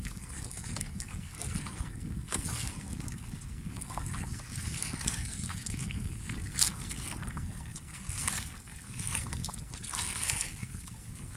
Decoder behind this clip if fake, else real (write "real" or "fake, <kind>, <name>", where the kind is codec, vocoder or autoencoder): fake, codec, SNAC